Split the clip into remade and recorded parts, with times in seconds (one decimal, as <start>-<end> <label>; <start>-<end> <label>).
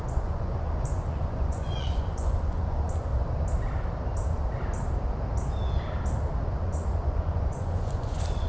0.0-3.1 remade; 3.1-6.6 recorded; 6.6-8.5 remade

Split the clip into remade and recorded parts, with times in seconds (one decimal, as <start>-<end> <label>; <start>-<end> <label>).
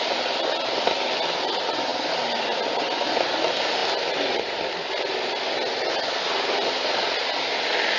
0.0-8.0 recorded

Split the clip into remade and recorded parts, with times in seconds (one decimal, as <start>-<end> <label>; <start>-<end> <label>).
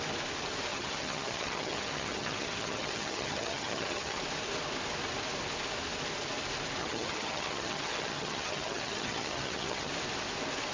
0.0-0.7 recorded; 0.7-4.2 remade; 4.2-6.8 recorded; 6.8-9.9 remade; 9.9-10.7 recorded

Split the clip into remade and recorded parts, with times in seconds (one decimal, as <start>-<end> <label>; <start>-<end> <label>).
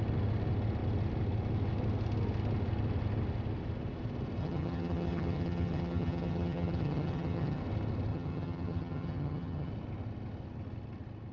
0.0-4.4 recorded; 4.4-7.6 remade; 7.6-8.1 recorded; 8.1-9.7 remade; 9.7-11.3 recorded